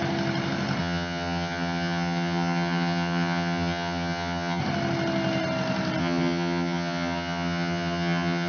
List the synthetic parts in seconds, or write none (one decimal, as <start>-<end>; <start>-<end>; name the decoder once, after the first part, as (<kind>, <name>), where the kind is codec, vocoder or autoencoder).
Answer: 0.8-4.6 (vocoder, HiFi-GAN); 6.0-8.5